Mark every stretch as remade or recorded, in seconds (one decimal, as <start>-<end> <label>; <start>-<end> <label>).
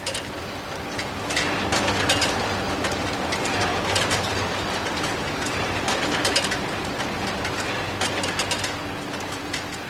0.0-2.2 recorded; 2.2-5.9 remade; 5.9-9.9 recorded